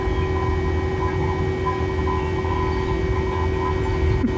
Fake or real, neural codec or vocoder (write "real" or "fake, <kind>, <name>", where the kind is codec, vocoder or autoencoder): real